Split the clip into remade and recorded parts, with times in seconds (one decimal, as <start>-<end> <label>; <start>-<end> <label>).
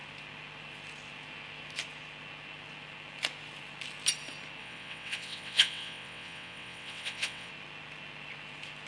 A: 0.0-4.6 recorded; 4.6-7.5 remade; 7.5-8.9 recorded